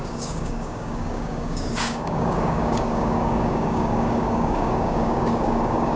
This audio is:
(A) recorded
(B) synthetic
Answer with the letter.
B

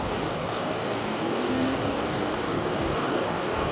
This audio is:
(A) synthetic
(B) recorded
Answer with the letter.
A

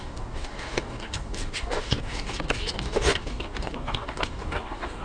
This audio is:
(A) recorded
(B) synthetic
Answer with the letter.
B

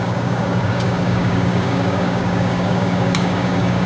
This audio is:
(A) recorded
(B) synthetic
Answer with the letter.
B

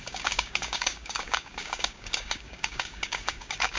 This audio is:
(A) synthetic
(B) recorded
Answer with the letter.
A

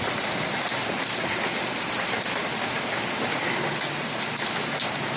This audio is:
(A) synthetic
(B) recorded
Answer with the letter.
B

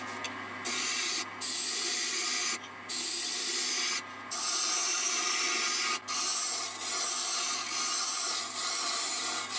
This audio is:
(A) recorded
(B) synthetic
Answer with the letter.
A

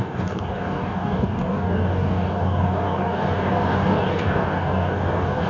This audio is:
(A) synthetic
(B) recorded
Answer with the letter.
A